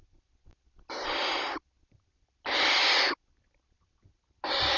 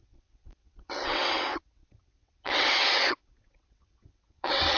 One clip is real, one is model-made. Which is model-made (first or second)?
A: second